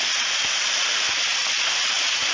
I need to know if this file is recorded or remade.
recorded